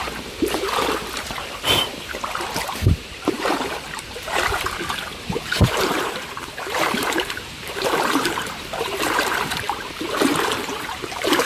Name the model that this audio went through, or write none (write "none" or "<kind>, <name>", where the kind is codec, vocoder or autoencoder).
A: vocoder, BigVGAN v2